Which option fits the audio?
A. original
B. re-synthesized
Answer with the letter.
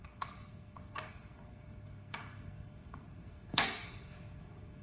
B